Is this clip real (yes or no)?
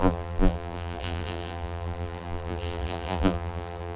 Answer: no